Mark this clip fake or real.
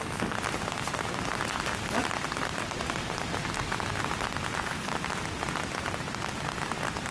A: real